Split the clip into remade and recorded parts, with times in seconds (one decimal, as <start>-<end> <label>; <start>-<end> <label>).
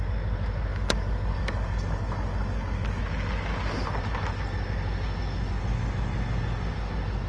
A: 0.0-0.7 recorded; 0.7-3.0 remade; 3.0-7.3 recorded